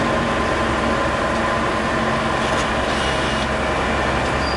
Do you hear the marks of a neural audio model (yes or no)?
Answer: no